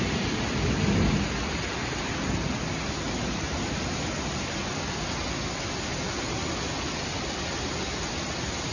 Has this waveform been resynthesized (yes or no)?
no